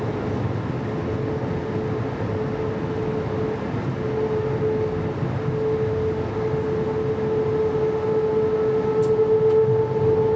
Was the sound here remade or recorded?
recorded